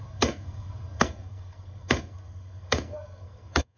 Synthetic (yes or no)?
yes